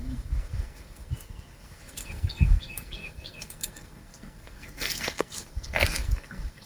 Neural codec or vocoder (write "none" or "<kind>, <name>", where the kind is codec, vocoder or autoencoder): codec, SNAC